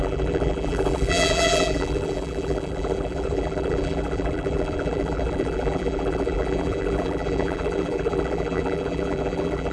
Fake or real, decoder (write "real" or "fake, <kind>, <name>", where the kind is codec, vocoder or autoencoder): fake, vocoder, BigVGAN v2